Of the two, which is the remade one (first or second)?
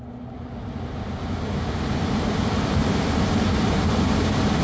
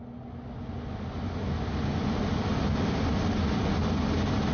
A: first